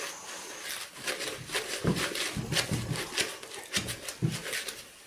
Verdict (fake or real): real